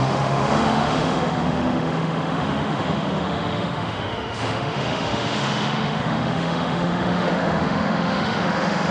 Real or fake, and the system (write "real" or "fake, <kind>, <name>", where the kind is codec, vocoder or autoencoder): fake, autoencoder, DAC-VAE